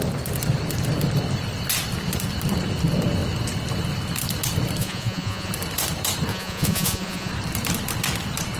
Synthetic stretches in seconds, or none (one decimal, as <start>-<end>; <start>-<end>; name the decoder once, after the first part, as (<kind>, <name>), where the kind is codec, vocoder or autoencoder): 4.8-5.5 (vocoder, Vocos); 6.3-7.3